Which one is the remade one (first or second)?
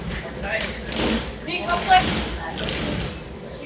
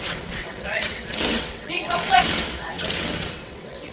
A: second